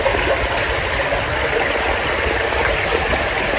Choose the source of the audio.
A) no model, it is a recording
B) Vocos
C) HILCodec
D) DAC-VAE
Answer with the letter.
A